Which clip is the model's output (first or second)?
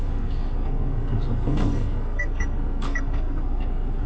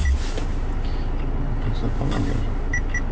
first